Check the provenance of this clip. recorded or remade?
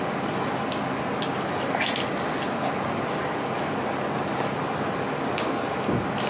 recorded